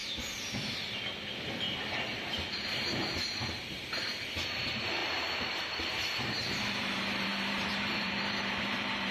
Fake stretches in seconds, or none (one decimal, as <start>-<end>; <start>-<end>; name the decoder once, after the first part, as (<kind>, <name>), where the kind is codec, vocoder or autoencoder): 2.9-9.1 (vocoder, BigVGAN v2)